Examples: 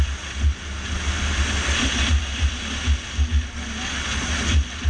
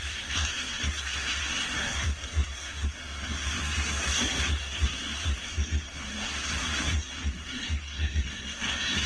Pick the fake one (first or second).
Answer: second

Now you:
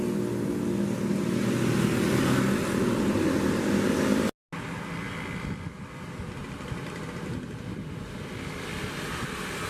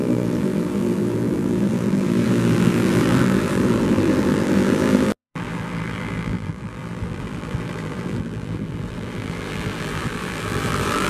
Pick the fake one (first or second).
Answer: second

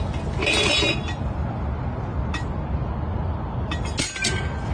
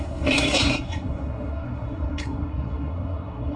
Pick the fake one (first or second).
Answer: second